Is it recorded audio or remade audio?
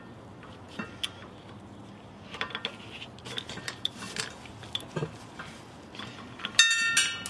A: recorded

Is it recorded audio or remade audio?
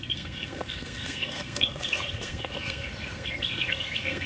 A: remade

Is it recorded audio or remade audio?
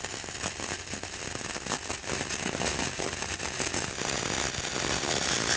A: recorded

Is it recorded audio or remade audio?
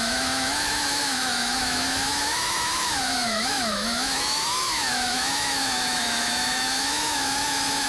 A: remade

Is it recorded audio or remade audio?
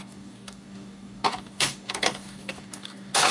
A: remade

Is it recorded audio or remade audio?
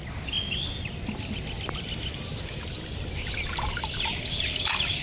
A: recorded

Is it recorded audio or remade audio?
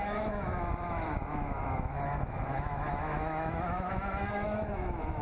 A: remade